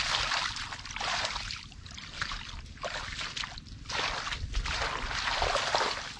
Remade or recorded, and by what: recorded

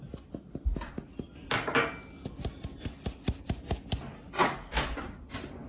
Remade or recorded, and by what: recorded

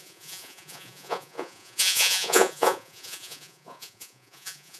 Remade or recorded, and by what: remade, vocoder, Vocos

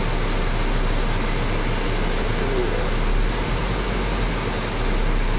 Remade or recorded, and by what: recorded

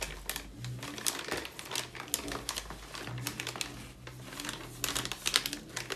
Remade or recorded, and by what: recorded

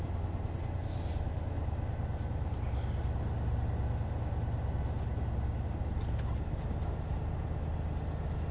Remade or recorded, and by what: recorded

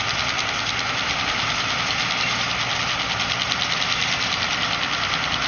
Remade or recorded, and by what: recorded